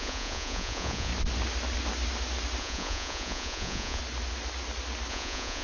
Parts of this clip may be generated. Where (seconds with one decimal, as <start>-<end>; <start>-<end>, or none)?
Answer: 0.0-1.1; 2.6-4.0; 5.1-5.6